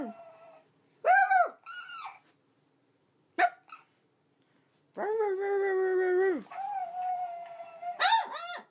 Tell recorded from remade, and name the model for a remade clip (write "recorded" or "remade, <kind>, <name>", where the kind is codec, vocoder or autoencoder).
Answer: recorded